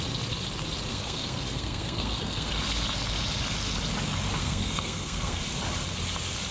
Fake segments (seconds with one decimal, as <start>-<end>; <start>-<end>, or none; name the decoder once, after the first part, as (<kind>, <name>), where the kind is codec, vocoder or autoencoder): 0.9-2.5 (codec, SNAC); 4.4-5.4